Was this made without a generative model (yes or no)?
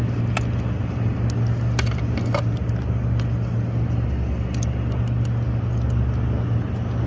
yes